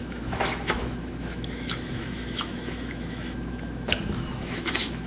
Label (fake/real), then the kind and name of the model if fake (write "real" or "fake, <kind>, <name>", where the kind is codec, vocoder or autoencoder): fake, autoencoder, DAC-VAE